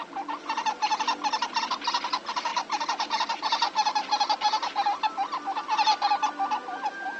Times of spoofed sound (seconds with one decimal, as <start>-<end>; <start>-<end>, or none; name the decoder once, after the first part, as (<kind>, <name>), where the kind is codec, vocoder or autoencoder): 0.0-0.9 (vocoder, BigVGAN v2); 1.6-7.2